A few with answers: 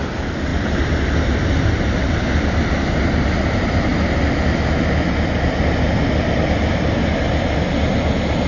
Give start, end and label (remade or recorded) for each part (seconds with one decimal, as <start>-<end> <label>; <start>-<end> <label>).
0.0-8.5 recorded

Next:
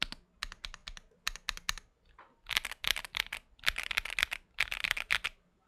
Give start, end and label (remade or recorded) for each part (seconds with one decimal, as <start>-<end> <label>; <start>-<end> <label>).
0.0-5.7 recorded

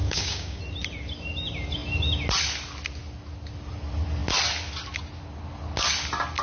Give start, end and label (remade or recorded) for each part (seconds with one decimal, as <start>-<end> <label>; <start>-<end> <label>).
0.0-0.6 remade; 0.6-6.4 recorded

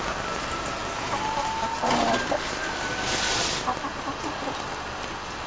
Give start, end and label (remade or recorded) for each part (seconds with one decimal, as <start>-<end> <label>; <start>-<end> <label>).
0.0-5.5 recorded

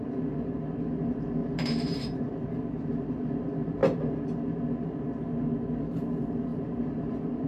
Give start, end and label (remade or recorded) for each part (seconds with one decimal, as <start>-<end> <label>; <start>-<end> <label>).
0.0-1.4 recorded; 1.4-2.6 remade; 2.6-6.5 recorded; 6.5-7.5 remade

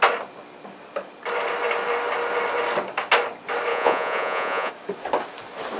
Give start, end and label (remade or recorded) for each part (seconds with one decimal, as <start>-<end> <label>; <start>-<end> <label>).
0.0-3.7 recorded; 3.7-4.7 remade; 4.7-5.8 recorded

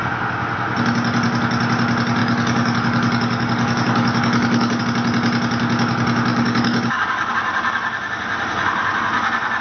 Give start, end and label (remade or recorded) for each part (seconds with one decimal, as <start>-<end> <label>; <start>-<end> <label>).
0.0-2.2 recorded; 2.2-4.8 remade; 4.8-6.3 recorded; 6.3-7.3 remade; 7.3-9.6 recorded